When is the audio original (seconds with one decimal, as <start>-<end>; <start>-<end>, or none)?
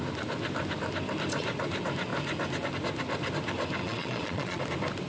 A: 0.0-3.8; 4.6-5.1